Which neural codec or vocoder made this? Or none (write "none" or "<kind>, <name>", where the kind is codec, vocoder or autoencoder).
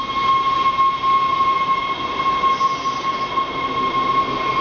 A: none